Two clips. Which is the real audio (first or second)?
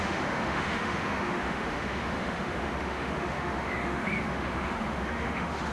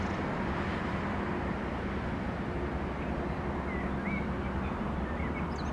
second